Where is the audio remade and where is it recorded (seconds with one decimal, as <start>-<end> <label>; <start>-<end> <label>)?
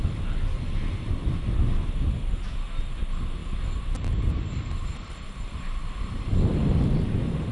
0.0-7.5 recorded